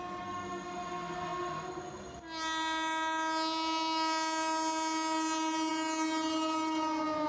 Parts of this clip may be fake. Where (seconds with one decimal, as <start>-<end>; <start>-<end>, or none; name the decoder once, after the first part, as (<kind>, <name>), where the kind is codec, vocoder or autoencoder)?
none